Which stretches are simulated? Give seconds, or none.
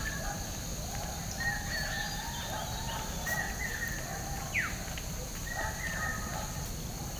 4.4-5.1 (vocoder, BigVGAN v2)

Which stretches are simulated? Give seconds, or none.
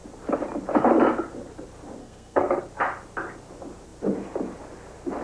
2.0-2.6 (codec, SNAC)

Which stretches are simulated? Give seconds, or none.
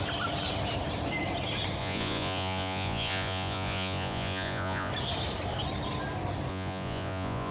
1.8-4.9 (vocoder, Vocos); 6.5-7.5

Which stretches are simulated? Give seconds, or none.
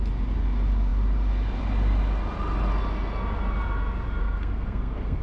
4.2-5.2 (codec, SNAC)